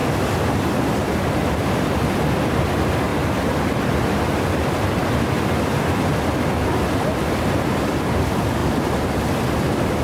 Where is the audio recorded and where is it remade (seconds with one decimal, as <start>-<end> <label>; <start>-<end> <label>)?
0.0-10.0 recorded